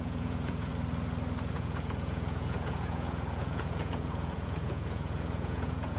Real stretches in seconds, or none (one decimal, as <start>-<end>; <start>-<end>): 0.7-1.5